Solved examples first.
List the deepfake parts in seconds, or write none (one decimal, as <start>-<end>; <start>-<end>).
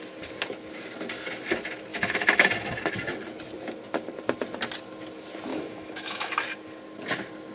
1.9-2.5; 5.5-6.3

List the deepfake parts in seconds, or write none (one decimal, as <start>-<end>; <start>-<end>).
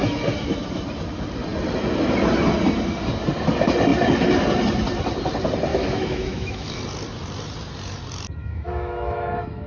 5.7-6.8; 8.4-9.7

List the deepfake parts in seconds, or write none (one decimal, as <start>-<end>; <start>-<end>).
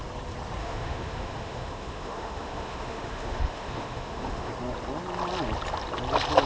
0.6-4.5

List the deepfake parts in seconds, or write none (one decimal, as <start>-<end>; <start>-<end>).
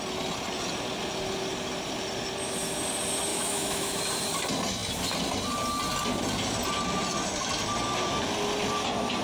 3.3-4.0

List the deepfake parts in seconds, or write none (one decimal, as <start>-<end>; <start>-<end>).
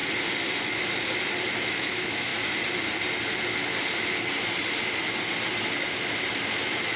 1.6-2.3; 6.5-7.0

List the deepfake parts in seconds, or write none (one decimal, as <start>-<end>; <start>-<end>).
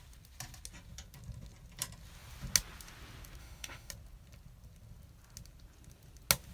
3.4-3.9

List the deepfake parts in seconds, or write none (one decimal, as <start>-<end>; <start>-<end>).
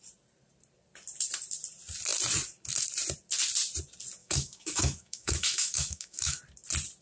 4.2-6.4